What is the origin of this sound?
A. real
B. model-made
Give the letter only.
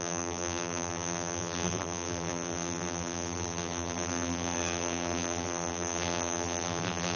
B